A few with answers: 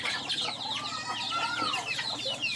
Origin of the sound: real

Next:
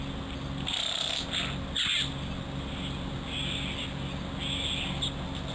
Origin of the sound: real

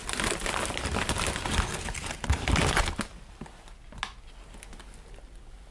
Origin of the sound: real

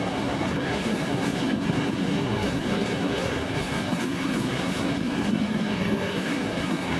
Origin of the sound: fake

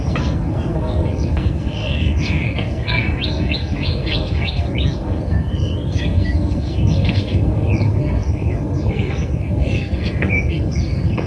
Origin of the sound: fake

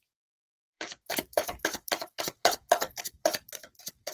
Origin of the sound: fake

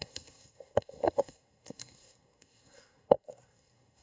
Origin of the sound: fake